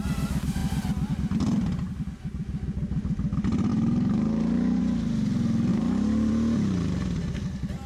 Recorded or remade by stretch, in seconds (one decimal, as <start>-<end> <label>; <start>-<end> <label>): 0.0-3.7 recorded; 3.7-4.8 remade; 4.8-5.7 recorded; 5.7-6.3 remade; 6.3-7.9 recorded